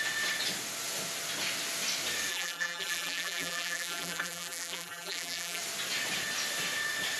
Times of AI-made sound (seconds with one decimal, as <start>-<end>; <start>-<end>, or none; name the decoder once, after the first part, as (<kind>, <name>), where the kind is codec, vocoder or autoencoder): 2.3-5.6 (vocoder, BigVGAN v2)